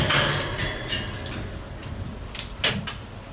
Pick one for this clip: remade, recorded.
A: recorded